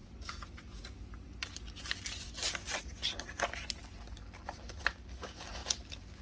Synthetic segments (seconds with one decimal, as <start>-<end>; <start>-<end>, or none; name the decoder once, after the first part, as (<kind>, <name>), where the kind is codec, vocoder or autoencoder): none